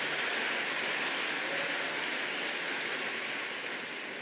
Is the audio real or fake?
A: real